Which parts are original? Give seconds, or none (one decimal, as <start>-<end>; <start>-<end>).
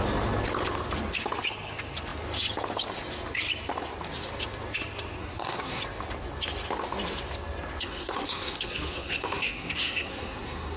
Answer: 0.0-5.2; 5.8-7.8